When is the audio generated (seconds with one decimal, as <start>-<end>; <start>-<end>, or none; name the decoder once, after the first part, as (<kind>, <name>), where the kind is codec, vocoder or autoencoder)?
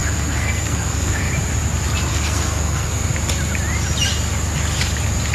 0.0-1.3 (codec, SNAC); 2.1-3.1